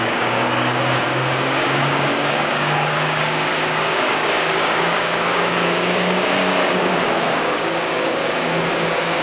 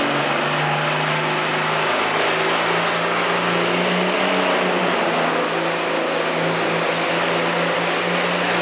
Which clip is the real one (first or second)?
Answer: second